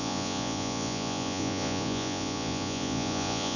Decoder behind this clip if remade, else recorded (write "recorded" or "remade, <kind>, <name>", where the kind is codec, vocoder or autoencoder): remade, vocoder, Vocos